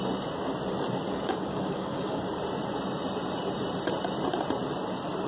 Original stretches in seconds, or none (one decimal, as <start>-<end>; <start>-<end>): 0.0-1.1; 2.2-5.3